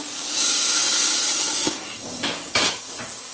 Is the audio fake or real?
fake